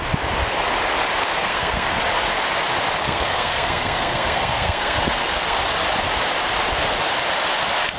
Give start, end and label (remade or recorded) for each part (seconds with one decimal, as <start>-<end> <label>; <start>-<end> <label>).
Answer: 0.0-1.2 recorded; 1.2-2.0 remade; 2.0-3.0 recorded; 3.0-5.6 remade; 5.6-8.0 recorded